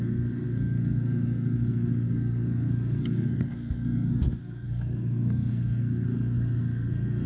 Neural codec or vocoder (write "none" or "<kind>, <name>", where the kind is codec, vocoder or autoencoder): codec, SNAC